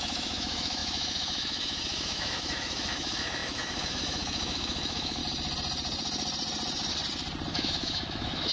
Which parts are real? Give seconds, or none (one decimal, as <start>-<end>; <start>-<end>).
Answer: 5.2-7.5